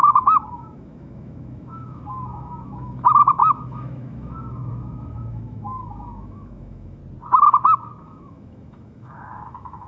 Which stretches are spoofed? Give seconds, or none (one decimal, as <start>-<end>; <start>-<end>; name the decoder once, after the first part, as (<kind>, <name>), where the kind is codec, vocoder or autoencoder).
0.0-7.0 (autoencoder, DAC-VAE); 8.0-9.9